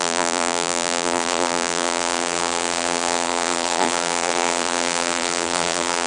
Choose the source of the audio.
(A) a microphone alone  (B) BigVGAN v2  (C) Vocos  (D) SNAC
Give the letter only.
B